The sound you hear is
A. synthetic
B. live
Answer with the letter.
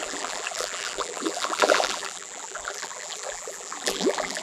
A